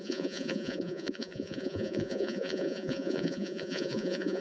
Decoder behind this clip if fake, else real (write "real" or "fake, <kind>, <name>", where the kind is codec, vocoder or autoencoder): fake, vocoder, Vocos